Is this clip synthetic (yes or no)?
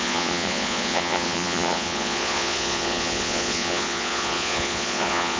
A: yes